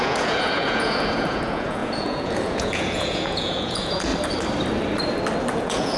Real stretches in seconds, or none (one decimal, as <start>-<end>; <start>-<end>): 4.1-5.5